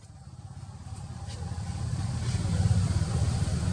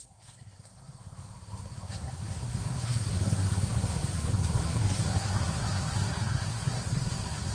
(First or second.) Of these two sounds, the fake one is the second